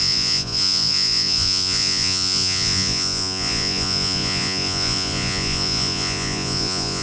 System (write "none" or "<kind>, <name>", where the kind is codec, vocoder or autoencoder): vocoder, Vocos